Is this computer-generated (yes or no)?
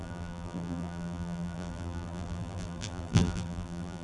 yes